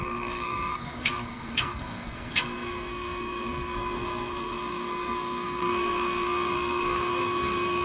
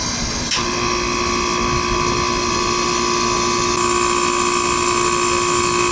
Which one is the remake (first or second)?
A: first